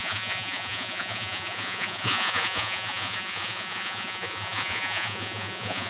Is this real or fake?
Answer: fake